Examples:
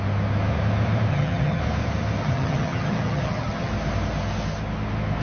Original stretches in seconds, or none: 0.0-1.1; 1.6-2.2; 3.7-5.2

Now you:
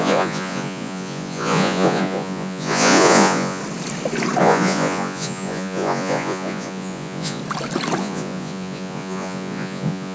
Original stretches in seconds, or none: 3.6-4.4; 7.4-8.0

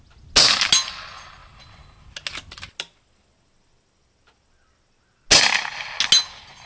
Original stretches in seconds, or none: 0.0-6.7

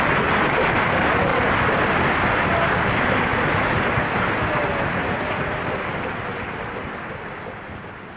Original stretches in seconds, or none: 0.0-3.3; 3.9-5.0; 5.5-8.2

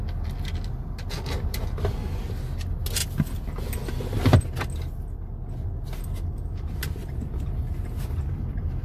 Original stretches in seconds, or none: 0.0-7.0; 8.0-8.8